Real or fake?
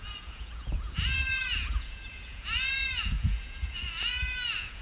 fake